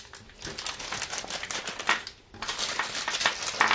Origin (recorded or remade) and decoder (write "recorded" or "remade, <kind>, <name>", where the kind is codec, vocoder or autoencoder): recorded